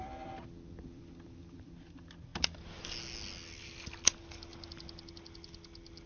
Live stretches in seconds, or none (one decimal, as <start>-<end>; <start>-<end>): 0.0-6.1